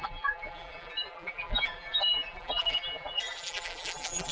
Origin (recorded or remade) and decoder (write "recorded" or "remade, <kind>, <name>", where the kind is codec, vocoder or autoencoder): remade, vocoder, BigVGAN v2